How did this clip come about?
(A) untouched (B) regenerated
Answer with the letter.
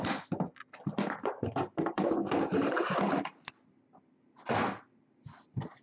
B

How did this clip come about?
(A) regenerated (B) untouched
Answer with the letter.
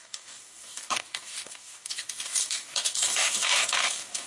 A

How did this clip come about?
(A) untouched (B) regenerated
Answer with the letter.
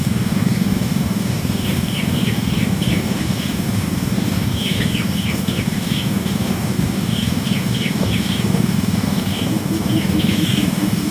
B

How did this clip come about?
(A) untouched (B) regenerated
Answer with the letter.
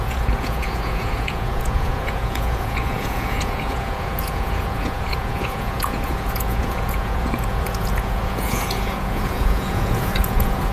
B